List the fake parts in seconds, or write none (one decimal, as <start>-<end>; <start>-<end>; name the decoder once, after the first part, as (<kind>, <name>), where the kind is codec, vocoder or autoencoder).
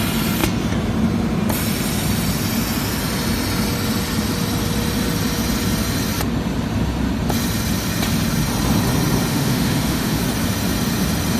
9.3-10.2 (autoencoder, DAC-VAE)